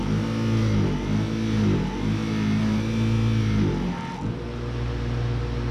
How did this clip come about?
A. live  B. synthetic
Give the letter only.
A